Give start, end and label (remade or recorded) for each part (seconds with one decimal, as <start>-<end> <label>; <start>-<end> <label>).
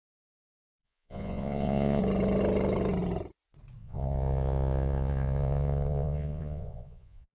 0.0-0.8 recorded; 0.8-2.0 remade; 2.0-3.8 recorded; 3.8-7.3 remade